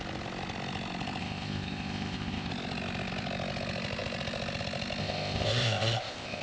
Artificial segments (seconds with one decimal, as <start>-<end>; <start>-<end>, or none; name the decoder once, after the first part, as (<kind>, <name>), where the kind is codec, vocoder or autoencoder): 1.2-2.5 (codec, ZipCodec); 5.0-6.4